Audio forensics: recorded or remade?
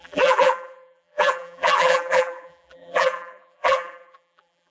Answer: remade